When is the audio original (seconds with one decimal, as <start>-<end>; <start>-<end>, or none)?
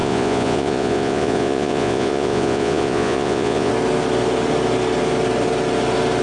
3.7-6.2